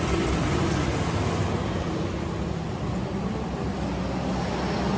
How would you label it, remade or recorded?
recorded